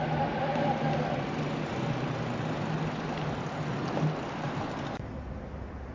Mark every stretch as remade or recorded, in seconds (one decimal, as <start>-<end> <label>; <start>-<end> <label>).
0.0-5.9 recorded